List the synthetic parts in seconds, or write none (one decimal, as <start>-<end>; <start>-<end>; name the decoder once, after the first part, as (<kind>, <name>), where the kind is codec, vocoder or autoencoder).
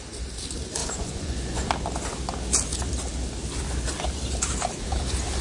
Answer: 0.8-1.7 (vocoder, Vocos)